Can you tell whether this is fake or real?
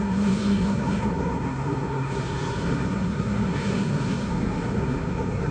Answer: fake